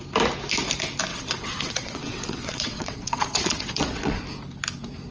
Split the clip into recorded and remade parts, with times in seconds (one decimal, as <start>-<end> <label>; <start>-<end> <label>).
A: 0.0-1.1 recorded; 1.1-4.2 remade; 4.2-5.1 recorded